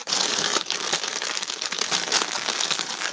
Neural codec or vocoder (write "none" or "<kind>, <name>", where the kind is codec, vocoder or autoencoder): codec, DAC